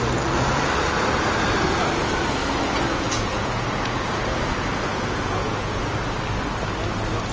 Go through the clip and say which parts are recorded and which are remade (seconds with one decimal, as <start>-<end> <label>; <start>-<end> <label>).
0.0-2.9 recorded; 2.9-4.4 remade; 4.4-4.9 recorded; 4.9-5.8 remade; 5.8-7.3 recorded